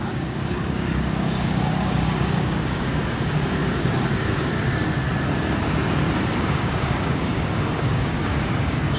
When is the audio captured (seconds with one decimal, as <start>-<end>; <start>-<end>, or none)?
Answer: 5.0-6.4